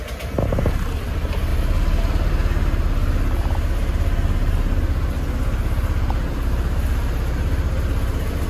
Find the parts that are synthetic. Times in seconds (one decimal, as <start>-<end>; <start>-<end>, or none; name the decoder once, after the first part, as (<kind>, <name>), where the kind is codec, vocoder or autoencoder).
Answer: none